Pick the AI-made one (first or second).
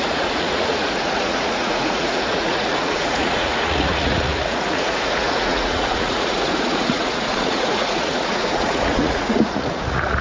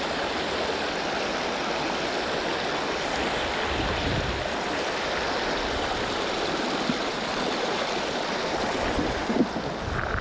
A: first